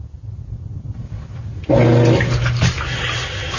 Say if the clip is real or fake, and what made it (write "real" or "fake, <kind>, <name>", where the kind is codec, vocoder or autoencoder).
real